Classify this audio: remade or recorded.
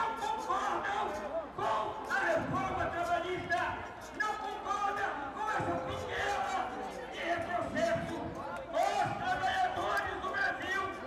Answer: recorded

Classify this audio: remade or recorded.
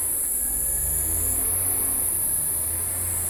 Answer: recorded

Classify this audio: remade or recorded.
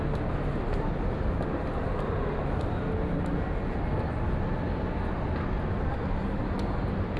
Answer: recorded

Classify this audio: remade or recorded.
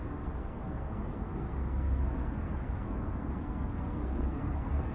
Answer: remade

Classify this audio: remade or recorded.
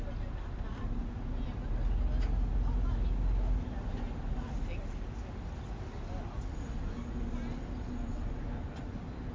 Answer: recorded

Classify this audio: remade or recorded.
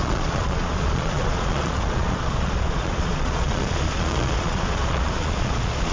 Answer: remade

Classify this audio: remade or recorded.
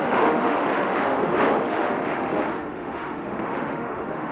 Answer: remade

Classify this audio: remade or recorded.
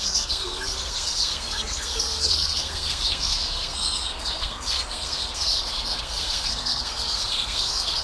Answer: remade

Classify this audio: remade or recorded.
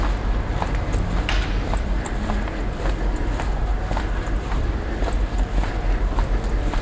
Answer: recorded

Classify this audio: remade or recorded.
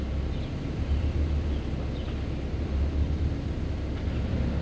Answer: recorded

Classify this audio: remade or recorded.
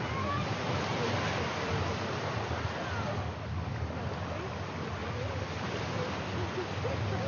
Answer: recorded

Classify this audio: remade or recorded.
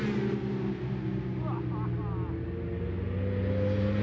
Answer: recorded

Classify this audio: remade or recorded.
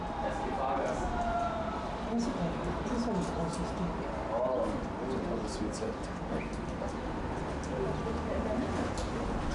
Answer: recorded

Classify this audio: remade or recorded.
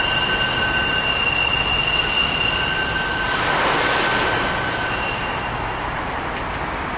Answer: recorded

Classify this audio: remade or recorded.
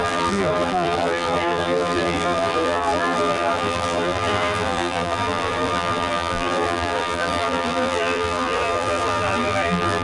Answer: remade